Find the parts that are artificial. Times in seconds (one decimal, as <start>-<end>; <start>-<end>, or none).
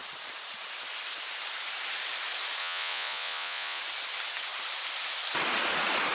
2.6-3.8